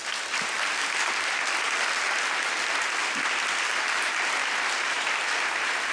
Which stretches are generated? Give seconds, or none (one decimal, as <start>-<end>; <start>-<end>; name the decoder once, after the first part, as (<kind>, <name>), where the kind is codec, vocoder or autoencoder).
none